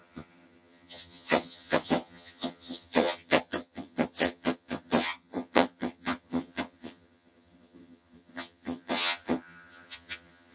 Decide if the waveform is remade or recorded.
remade